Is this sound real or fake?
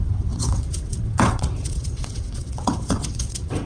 fake